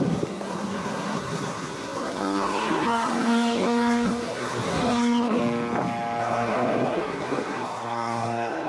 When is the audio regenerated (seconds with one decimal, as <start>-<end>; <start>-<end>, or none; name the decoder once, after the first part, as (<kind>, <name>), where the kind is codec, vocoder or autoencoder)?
0.0-5.4 (codec, SNAC); 6.2-8.7